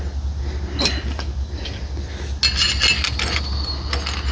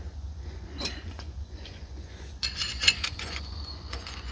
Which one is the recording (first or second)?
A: first